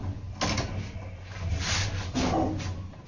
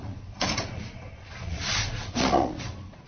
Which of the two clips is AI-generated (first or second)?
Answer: second